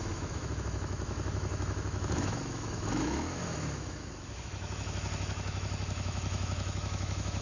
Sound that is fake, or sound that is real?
fake